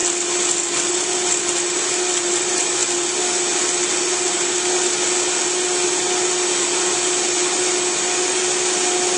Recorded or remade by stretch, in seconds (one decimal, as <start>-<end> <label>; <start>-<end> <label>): 0.0-9.2 recorded